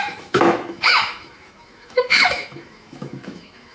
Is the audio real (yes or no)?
no